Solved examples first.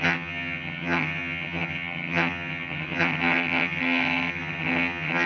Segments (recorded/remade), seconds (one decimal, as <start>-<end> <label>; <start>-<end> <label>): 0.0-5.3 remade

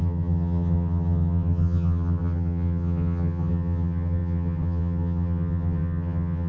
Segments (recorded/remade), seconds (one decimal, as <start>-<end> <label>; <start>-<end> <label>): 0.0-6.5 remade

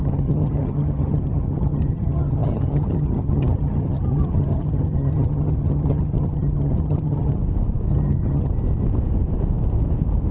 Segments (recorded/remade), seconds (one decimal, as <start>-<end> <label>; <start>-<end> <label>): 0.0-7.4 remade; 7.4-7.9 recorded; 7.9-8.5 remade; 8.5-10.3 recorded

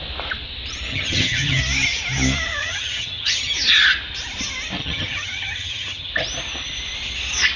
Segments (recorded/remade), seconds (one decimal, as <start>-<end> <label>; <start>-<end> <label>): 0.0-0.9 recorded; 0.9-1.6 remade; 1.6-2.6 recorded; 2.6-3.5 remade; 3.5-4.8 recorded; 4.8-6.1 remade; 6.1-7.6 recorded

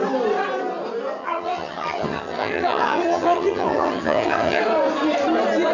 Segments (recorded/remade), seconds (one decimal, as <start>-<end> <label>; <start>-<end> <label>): 0.0-1.2 recorded; 1.2-4.6 remade; 4.6-5.7 recorded

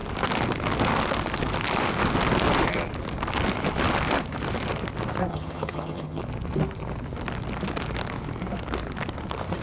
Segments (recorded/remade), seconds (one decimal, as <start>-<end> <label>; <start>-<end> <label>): 0.0-5.3 recorded; 5.3-6.2 remade; 6.2-9.6 recorded

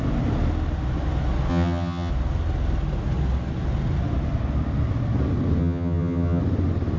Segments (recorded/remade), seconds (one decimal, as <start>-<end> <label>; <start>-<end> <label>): 0.0-1.5 recorded; 1.5-2.1 remade; 2.1-5.6 recorded; 5.6-6.4 remade; 6.4-7.0 recorded

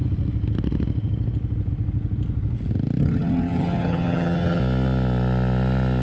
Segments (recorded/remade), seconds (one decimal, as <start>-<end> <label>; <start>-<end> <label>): 0.0-3.0 recorded; 3.0-4.6 remade; 4.6-6.0 recorded